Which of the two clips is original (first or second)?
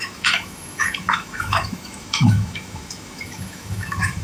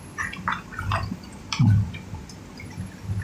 second